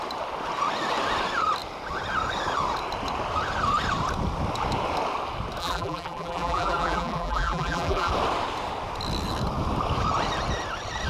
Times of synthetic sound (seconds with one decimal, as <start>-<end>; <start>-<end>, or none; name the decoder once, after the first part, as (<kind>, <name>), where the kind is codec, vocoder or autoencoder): 5.6-8.1 (vocoder, BigVGAN v2)